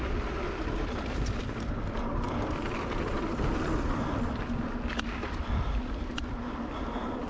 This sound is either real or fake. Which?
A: real